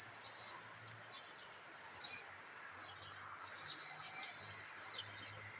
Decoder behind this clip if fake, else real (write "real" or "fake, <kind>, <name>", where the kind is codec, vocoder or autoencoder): real